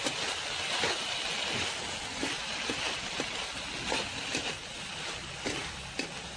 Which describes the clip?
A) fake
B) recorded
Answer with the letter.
B